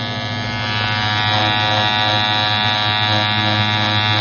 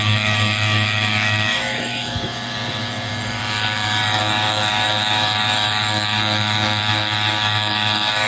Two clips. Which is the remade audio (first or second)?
second